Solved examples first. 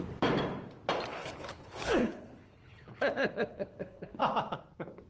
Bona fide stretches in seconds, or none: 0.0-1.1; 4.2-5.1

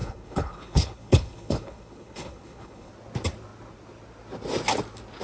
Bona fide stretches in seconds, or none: 2.9-5.2

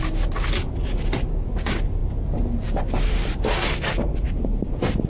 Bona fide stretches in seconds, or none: 0.0-5.1

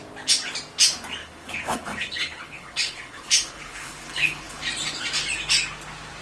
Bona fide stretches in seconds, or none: 0.0-1.2; 4.6-6.2

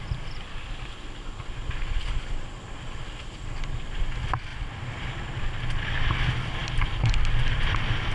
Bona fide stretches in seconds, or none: 0.0-8.1

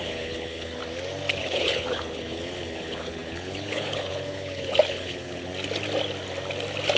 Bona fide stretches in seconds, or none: 0.8-1.4; 5.5-7.0

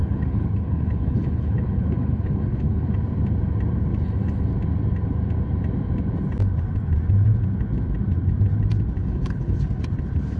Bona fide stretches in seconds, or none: 3.0-9.0; 9.6-10.4